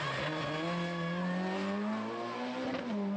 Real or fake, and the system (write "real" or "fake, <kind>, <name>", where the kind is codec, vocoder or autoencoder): real